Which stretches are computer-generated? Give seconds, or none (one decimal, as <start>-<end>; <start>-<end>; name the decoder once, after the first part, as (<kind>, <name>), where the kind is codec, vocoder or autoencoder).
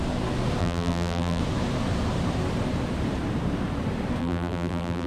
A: 0.6-1.4 (vocoder, BigVGAN v2); 4.2-5.1